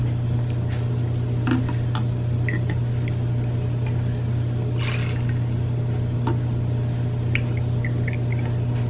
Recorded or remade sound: recorded